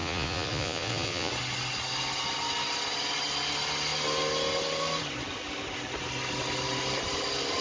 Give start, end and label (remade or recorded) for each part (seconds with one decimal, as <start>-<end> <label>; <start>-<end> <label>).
0.0-1.3 remade; 1.3-7.6 recorded